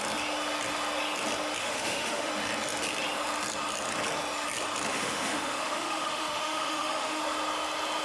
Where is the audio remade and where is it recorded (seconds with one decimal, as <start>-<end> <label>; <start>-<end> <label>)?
0.0-1.6 recorded; 1.6-2.3 remade; 2.3-4.9 recorded; 4.9-7.2 remade; 7.2-8.0 recorded